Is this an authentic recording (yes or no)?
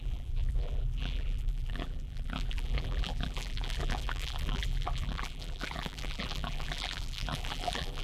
no